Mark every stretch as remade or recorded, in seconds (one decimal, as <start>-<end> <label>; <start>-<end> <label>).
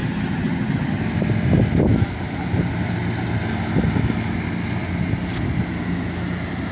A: 0.0-1.0 remade; 1.0-6.7 recorded